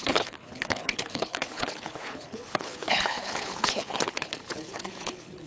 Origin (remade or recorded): remade